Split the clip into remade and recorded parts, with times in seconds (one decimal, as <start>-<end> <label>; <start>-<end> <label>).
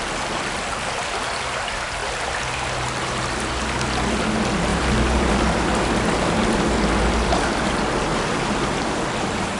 0.0-4.7 recorded; 4.7-5.7 remade; 5.7-8.1 recorded; 8.1-9.0 remade; 9.0-9.6 recorded